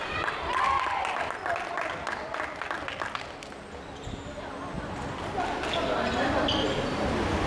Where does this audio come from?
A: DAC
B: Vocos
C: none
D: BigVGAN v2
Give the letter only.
C